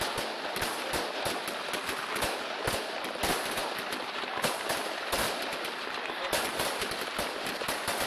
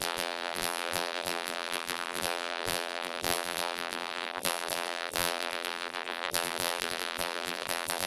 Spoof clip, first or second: second